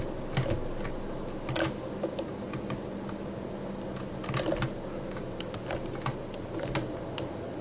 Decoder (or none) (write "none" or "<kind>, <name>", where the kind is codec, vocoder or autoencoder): none